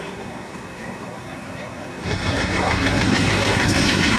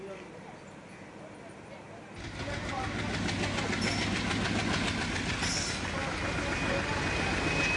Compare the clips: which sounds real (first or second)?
second